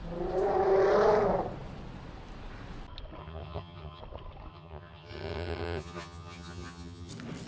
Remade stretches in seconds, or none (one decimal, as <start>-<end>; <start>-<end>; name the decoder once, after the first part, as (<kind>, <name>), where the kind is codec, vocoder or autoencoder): 3.2-4.0 (vocoder, HiFi-GAN); 4.5-7.1